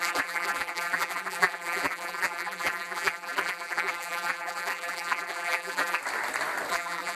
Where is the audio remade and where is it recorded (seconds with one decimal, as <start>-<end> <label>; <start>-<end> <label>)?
0.0-6.0 remade; 6.0-6.7 recorded; 6.7-7.2 remade